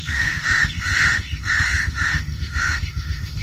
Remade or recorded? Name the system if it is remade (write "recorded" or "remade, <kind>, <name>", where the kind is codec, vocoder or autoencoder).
remade, autoencoder, DAC-VAE